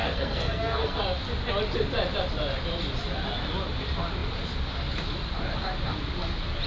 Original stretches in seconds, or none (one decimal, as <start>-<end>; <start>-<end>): 1.0-6.7